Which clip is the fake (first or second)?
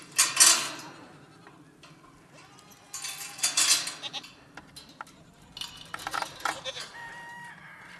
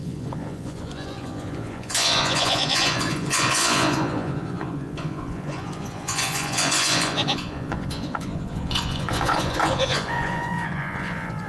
second